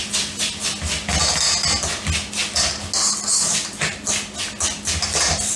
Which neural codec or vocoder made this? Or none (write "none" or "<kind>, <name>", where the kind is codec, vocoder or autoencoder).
none